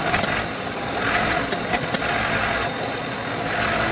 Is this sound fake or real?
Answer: real